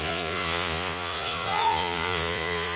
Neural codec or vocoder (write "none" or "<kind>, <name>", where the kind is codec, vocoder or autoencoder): vocoder, Vocos